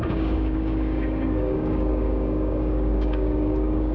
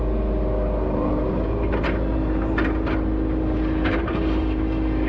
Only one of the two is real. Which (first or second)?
second